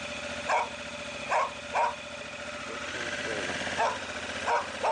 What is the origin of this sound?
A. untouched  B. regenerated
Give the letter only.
A